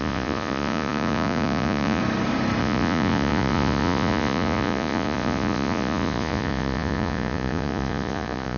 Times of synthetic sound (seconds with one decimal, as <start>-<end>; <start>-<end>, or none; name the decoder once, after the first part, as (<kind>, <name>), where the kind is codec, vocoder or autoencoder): 0.0-2.0 (vocoder, Vocos); 2.6-8.6

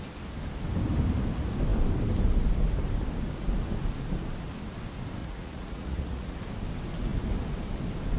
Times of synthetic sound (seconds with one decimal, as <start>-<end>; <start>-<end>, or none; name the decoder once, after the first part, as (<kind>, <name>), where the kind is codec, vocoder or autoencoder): 5.2-6.4 (vocoder, Vocos)

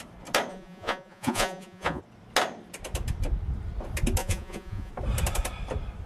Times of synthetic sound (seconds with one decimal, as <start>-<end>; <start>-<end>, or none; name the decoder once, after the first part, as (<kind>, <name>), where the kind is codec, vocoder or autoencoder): 0.5-2.0 (vocoder, Vocos); 4.2-4.9

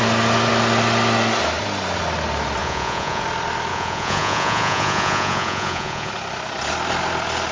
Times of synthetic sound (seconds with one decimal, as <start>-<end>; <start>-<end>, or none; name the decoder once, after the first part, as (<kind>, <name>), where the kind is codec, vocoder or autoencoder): 2.6-3.2 (vocoder, Vocos); 3.7-6.1

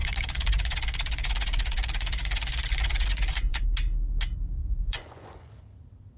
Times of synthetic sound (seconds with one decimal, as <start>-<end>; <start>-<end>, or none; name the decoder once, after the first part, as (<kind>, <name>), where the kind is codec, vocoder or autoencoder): 0.0-3.6 (vocoder, Vocos); 4.6-5.5